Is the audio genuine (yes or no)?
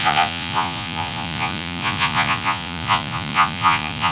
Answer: no